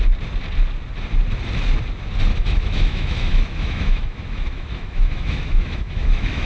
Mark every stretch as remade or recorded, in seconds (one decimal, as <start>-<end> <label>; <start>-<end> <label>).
0.0-2.3 recorded; 2.3-6.5 remade